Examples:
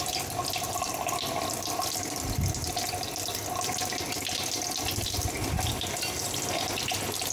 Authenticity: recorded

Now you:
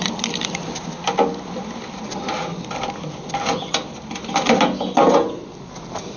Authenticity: recorded